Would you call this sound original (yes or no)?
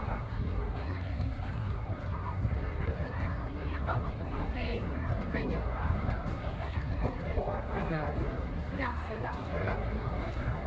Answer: no